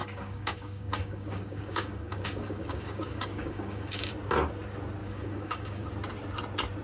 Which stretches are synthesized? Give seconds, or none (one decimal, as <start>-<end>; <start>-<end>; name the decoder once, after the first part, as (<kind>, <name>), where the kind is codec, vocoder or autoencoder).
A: 0.0-4.1 (codec, DAC); 5.0-5.9